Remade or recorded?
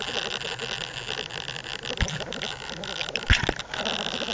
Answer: recorded